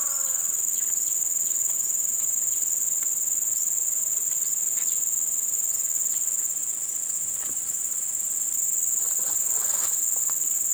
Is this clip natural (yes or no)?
yes